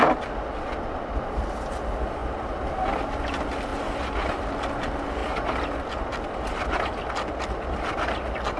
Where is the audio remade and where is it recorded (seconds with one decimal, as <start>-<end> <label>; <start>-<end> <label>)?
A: 0.0-8.6 recorded